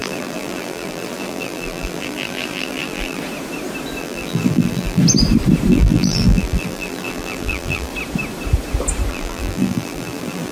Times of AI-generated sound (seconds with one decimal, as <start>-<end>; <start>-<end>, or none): 0.0-3.2; 4.0-5.0; 5.7-7.9; 9.1-10.5